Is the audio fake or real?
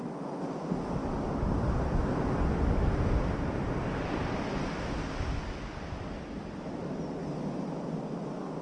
real